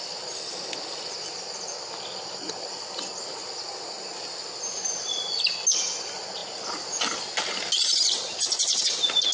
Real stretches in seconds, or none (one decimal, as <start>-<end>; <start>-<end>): 0.0-9.3